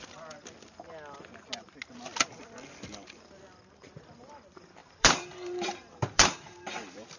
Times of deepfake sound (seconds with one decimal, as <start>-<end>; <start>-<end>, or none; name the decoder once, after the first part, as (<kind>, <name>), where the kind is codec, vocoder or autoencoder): 4.8-7.2 (vocoder, BigVGAN v2)